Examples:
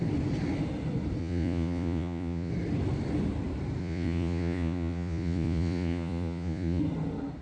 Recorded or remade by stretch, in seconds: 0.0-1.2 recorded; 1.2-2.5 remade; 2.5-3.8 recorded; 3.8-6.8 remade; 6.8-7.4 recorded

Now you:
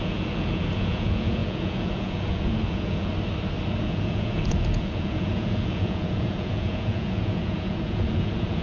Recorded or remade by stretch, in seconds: 0.0-3.1 remade; 3.1-3.8 recorded; 3.8-8.6 remade

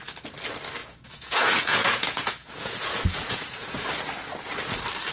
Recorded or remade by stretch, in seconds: 0.0-0.8 recorded; 0.8-3.9 remade; 3.9-5.1 recorded

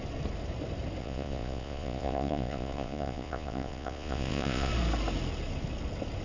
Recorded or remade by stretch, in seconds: 0.0-1.0 recorded; 1.0-4.7 remade; 4.7-6.2 recorded

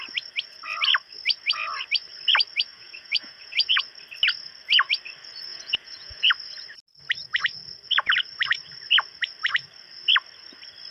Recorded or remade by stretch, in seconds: 0.0-2.7 recorded; 2.7-3.8 remade; 3.8-5.5 recorded; 5.5-6.3 remade; 6.3-10.9 recorded

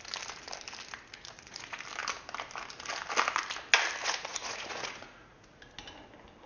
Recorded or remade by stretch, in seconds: 0.0-1.1 recorded; 1.1-1.8 remade; 1.8-4.0 recorded; 4.0-5.6 remade; 5.6-6.5 recorded

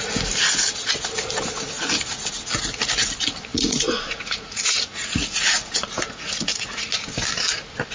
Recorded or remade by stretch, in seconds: 0.0-3.5 recorded; 3.5-6.9 remade; 6.9-7.9 recorded